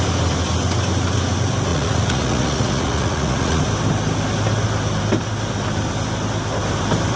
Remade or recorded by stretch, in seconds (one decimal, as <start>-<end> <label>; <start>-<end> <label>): 0.0-1.7 recorded; 1.7-3.6 remade; 3.6-7.2 recorded